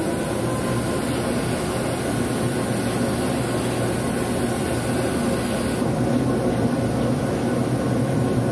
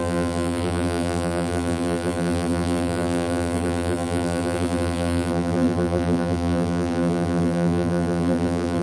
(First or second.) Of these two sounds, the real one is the first